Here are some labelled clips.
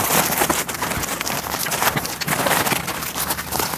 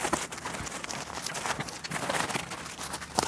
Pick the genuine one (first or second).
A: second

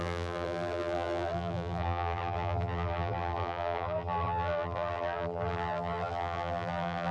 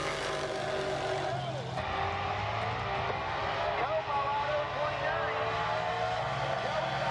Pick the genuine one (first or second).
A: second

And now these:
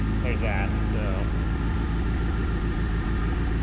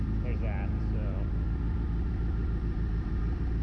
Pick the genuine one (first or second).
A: first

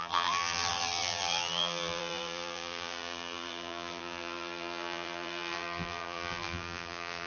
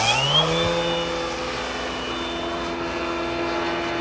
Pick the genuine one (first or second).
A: second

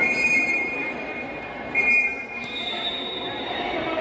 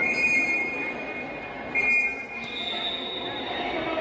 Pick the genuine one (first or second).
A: second